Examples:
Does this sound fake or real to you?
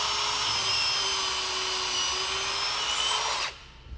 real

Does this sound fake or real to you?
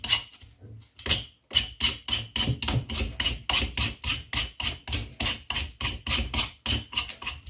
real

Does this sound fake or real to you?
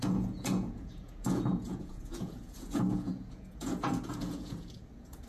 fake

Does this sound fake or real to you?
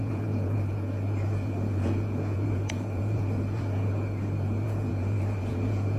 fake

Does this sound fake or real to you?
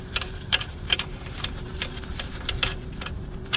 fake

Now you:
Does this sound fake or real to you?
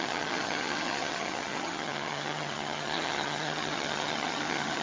fake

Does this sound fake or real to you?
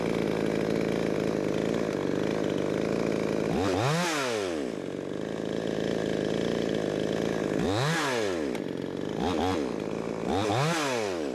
real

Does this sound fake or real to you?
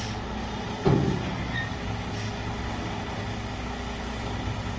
real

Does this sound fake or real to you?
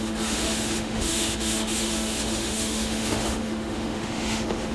fake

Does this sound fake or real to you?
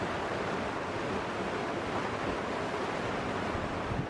fake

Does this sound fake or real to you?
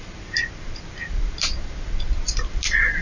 real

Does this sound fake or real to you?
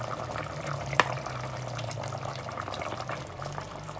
fake